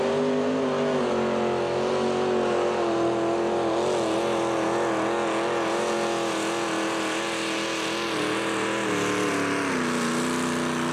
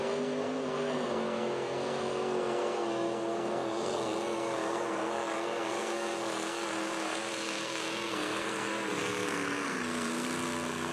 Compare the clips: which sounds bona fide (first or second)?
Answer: first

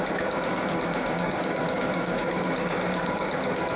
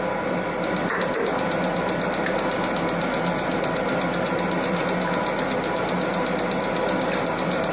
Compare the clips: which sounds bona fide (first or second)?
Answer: second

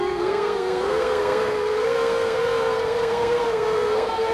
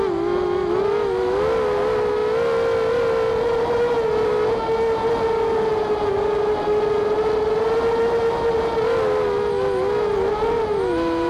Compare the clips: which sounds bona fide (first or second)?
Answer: second